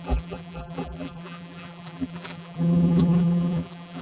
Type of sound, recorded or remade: remade